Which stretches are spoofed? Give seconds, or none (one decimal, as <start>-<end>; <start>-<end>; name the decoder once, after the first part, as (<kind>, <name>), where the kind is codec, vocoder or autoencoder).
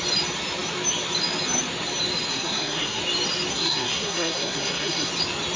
2.3-3.0 (codec, SNAC); 3.5-5.1